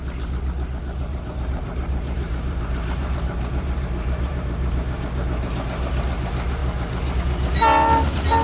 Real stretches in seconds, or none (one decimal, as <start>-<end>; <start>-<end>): 0.0-1.0; 6.0-8.4